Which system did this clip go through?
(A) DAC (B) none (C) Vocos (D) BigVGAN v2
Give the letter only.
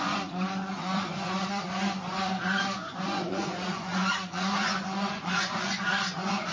C